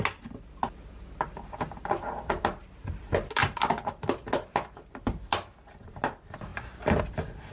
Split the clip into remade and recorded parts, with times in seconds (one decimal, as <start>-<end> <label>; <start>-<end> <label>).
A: 0.0-7.5 recorded